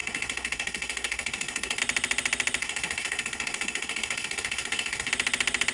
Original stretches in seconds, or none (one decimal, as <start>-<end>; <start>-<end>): 1.8-2.6; 5.1-5.7